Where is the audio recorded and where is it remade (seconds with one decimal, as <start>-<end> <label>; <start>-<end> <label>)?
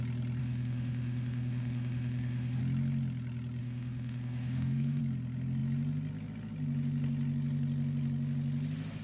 0.0-0.4 recorded; 0.4-2.6 remade; 2.6-3.6 recorded; 3.6-5.0 remade; 5.0-9.0 recorded